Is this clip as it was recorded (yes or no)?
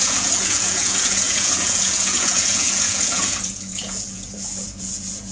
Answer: no